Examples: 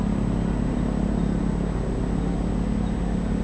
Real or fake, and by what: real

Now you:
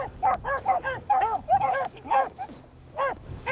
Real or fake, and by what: fake, codec, DAC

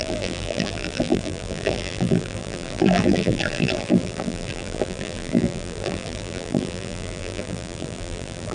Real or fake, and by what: fake, vocoder, BigVGAN v2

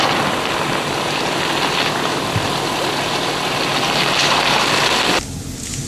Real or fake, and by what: real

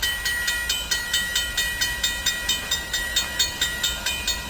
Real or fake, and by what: real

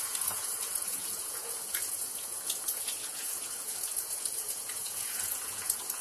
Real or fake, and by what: fake, vocoder, Vocos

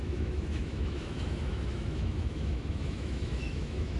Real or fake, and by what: fake, autoencoder, DAC-VAE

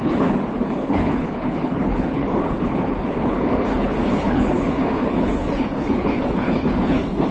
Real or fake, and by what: fake, codec, HILCodec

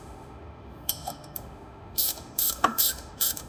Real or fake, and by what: fake, autoencoder, DAC-VAE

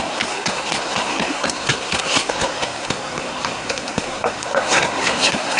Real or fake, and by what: fake, codec, SNAC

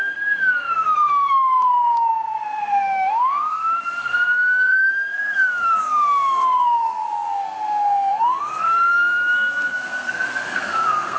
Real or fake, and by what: fake, codec, SNAC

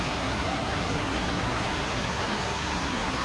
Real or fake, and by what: fake, codec, SNAC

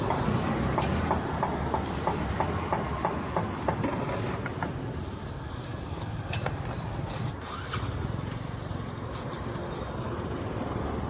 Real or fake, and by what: real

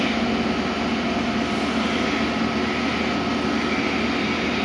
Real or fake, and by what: real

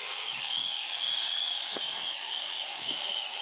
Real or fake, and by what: fake, codec, DAC